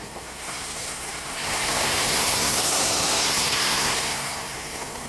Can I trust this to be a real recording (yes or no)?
no